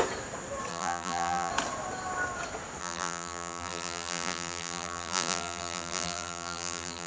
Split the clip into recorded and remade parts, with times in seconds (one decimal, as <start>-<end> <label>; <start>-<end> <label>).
0.0-0.7 recorded; 0.7-1.5 remade; 1.5-2.8 recorded; 2.8-7.1 remade